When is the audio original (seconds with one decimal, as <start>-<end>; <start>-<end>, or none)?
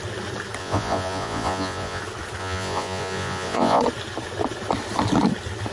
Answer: 0.0-0.6; 2.0-2.4; 3.8-5.7